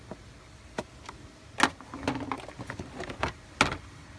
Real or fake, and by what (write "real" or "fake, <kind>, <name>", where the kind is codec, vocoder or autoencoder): real